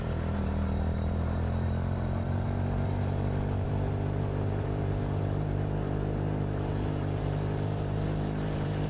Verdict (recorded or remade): remade